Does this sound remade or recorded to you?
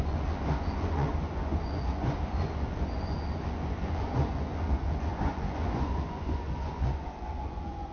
remade